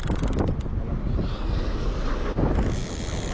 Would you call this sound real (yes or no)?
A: yes